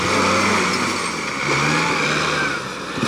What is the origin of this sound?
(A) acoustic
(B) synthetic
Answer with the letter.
A